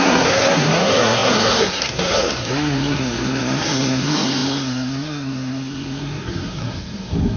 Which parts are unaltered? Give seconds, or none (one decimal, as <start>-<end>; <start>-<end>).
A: none